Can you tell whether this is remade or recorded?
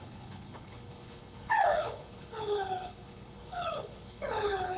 remade